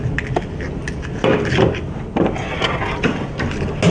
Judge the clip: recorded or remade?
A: recorded